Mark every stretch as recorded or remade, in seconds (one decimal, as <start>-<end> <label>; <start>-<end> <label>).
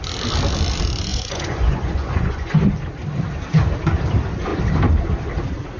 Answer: 0.0-1.1 recorded; 1.1-2.6 remade; 2.6-5.8 recorded